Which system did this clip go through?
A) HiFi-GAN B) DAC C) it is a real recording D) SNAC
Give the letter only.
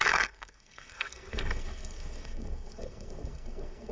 D